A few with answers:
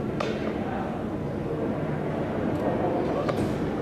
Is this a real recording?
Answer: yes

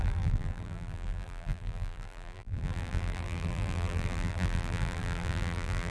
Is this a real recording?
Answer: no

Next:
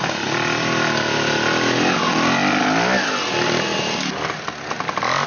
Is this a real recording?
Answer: yes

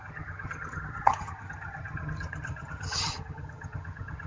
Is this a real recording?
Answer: no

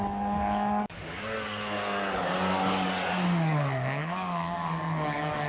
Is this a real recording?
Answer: no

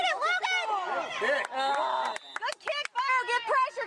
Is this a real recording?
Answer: yes